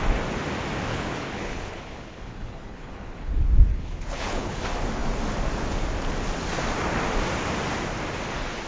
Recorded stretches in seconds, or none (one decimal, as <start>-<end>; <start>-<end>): 0.0-0.9; 3.3-3.7; 4.6-8.7